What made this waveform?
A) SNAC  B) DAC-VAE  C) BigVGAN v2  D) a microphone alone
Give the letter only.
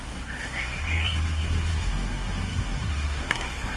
A